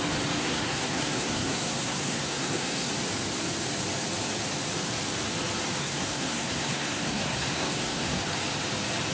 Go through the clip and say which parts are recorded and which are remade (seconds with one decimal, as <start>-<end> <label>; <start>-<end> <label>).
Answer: 0.0-0.4 recorded; 0.4-2.9 remade; 2.9-5.8 recorded; 5.8-8.2 remade; 8.2-9.1 recorded